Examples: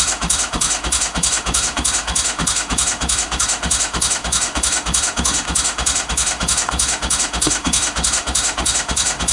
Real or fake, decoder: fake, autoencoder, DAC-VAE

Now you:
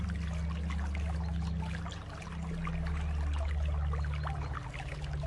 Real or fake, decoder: real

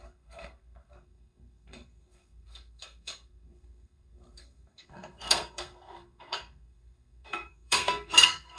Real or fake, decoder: fake, codec, SNAC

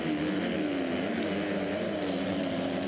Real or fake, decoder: real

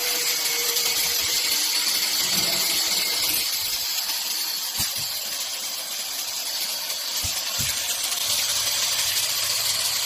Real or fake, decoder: fake, vocoder, BigVGAN v2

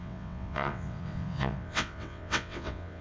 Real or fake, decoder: fake, vocoder, WaveNeXt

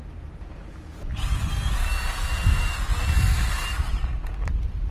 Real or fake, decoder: real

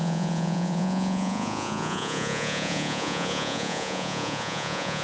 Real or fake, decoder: fake, vocoder, Vocos